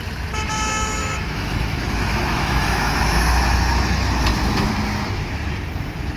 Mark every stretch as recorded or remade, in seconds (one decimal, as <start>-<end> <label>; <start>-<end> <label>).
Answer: 0.0-1.0 recorded; 1.0-4.7 remade; 4.7-6.2 recorded